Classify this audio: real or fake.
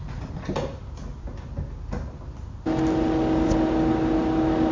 real